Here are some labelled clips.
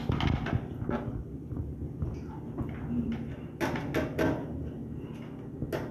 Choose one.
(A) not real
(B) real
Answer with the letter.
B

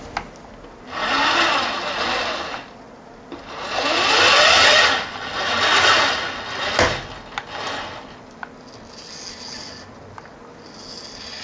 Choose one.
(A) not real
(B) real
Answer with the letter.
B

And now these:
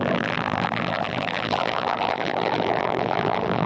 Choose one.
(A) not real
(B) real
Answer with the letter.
A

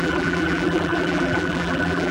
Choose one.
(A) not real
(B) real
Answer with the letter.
A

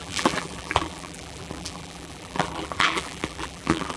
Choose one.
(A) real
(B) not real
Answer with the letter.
B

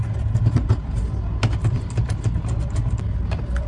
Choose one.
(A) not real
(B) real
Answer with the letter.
B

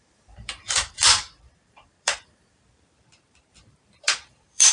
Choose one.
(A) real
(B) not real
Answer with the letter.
B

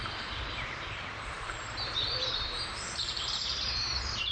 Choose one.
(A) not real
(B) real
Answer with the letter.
A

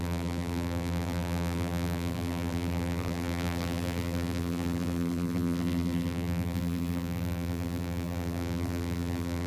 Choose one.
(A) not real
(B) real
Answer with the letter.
A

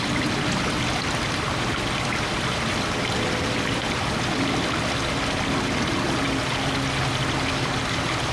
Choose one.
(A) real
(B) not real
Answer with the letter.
A